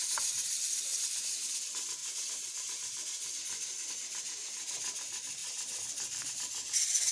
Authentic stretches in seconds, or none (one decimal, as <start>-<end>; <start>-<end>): 0.0-0.9; 1.6-2.0; 3.9-5.4; 6.3-7.1